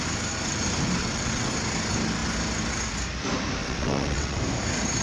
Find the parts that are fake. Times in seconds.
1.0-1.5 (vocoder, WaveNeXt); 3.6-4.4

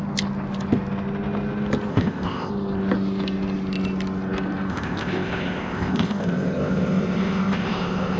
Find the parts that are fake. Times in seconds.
1.9-2.5 (codec, ZipCodec); 4.7-8.2